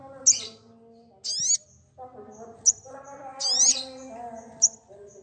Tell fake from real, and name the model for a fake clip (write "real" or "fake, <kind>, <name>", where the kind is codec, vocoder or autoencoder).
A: real